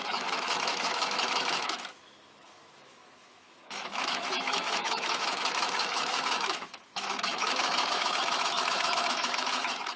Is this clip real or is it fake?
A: fake